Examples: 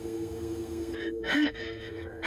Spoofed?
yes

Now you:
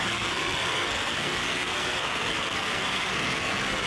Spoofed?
yes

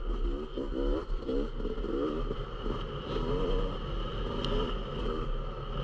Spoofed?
no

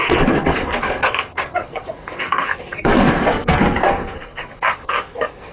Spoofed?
yes